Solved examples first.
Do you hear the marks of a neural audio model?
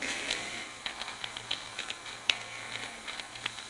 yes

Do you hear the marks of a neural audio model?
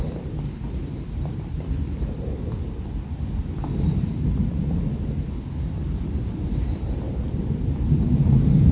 no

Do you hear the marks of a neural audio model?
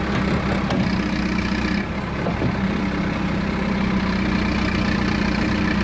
no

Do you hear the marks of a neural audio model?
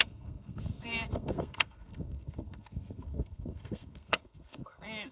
yes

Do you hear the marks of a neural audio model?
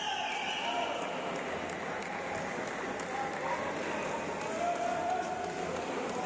no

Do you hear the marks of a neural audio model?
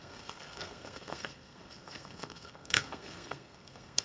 yes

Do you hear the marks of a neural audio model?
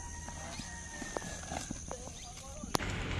no